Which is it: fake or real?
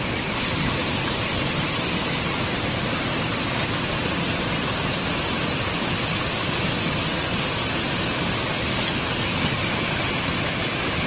real